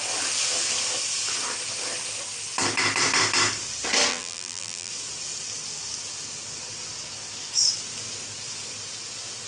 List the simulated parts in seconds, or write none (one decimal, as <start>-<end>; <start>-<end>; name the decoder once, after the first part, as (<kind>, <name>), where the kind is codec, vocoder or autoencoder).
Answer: 4.1-4.9 (vocoder, BigVGAN v2)